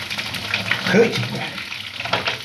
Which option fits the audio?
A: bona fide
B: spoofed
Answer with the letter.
A